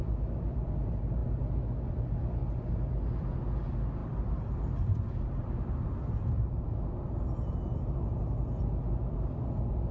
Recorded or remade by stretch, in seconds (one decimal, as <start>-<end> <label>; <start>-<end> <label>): 0.0-4.0 recorded; 4.0-5.4 remade; 5.4-9.9 recorded